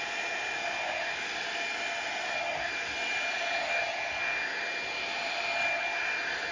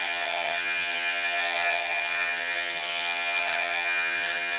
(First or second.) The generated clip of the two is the second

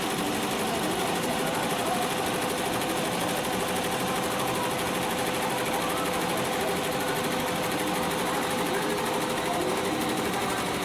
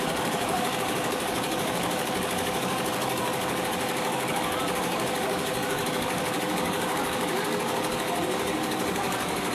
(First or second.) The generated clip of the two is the second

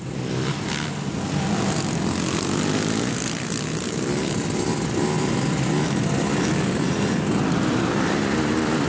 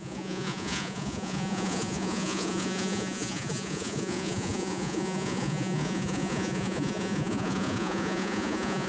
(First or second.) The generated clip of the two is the second